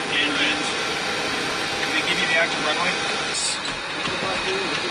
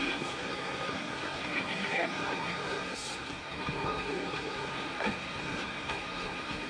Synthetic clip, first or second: second